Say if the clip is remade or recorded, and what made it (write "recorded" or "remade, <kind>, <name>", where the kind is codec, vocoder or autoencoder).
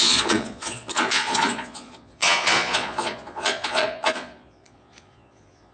remade, vocoder, Vocos